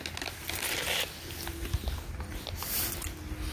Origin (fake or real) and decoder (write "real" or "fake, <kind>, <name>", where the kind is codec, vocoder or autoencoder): real